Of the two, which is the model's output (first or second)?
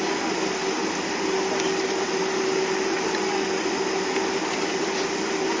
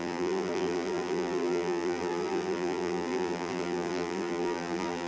second